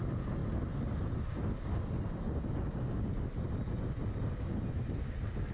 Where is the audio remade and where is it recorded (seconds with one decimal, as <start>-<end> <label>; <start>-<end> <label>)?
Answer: 0.0-0.4 recorded; 0.4-2.5 remade; 2.5-5.5 recorded